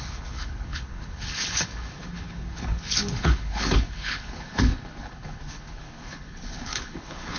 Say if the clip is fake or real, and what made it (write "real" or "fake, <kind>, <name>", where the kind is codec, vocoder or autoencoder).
fake, codec, HILCodec